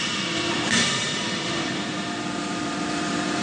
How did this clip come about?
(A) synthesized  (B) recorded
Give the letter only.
A